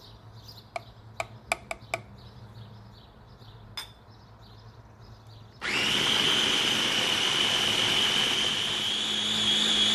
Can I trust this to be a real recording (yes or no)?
yes